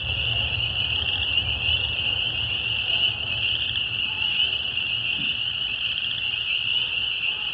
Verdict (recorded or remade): recorded